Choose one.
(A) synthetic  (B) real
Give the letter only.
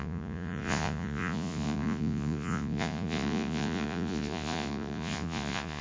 A